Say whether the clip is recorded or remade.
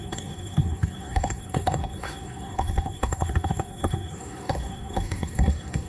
remade